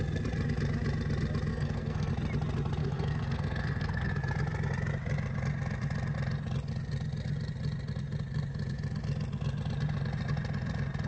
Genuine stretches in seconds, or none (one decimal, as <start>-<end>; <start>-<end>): 0.0-1.5; 2.1-2.8; 4.1-11.1